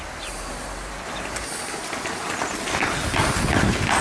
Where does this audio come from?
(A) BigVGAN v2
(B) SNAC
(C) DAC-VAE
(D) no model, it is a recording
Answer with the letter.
D